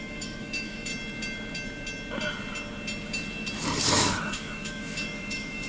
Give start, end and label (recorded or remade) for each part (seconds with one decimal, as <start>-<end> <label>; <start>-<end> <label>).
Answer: 0.0-0.9 remade; 0.9-3.9 recorded; 3.9-5.7 remade